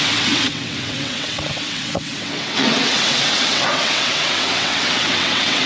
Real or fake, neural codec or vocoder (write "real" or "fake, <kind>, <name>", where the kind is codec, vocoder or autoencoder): fake, vocoder, WaveNeXt